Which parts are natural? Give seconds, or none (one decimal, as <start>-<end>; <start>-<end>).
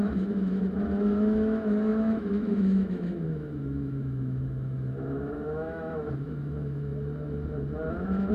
6.9-7.9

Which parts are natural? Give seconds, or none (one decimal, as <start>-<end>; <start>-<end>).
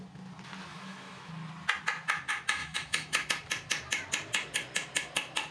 0.0-0.7; 1.3-2.6; 3.3-5.5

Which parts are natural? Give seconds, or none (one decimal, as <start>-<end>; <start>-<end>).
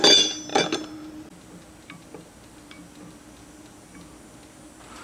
0.0-5.0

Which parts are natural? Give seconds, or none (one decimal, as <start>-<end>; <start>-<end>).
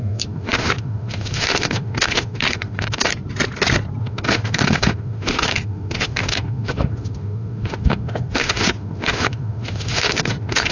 3.1-4.0